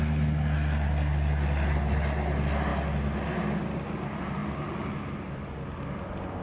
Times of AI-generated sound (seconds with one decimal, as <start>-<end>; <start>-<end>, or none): none